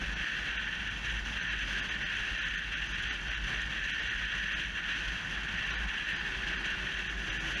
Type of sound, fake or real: real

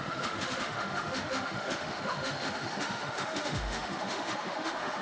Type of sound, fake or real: fake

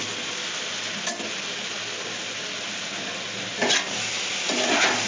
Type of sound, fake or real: real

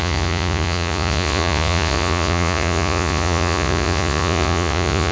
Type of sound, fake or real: fake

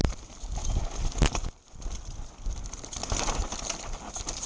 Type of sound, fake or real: real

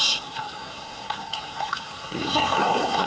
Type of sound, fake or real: fake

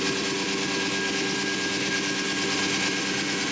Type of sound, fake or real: real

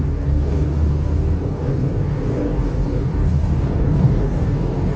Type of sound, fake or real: fake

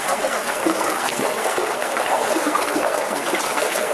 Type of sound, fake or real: fake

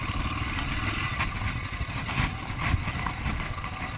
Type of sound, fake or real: fake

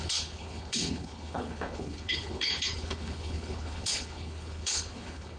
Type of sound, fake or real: fake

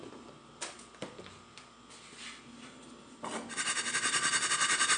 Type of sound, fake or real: real